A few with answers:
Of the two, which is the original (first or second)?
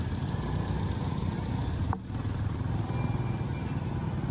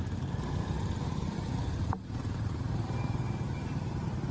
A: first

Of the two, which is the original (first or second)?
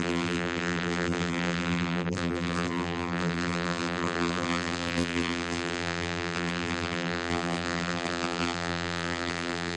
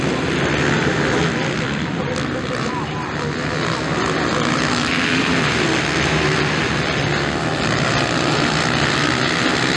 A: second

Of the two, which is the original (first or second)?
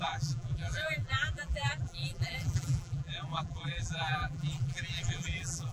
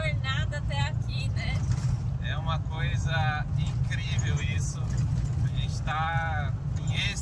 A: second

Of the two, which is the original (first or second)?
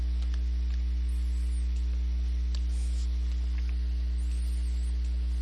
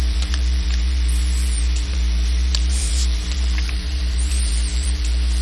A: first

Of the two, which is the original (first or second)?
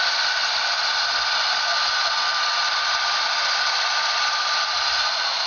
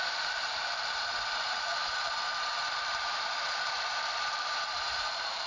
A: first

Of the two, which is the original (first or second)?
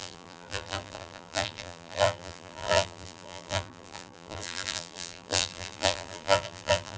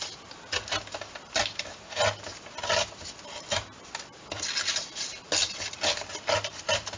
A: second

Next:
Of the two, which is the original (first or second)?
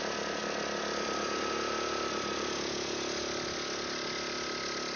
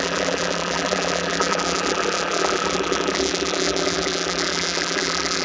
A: first